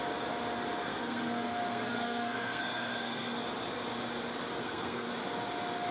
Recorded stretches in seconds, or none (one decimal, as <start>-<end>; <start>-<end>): 0.0-0.8; 3.4-4.6; 5.1-5.9